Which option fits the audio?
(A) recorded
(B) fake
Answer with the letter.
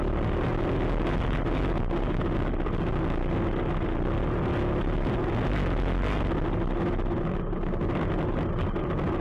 A